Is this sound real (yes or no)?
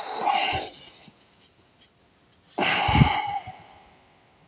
yes